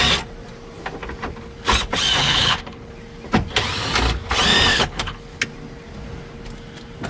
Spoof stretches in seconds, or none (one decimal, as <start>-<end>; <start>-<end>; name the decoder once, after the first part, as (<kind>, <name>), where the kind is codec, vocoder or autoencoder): 2.2-2.9 (codec, HILCodec); 4.7-5.4